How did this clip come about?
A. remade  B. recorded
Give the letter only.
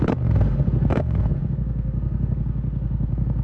A